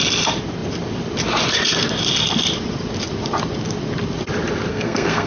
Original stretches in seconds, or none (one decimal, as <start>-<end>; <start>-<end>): 0.0-4.7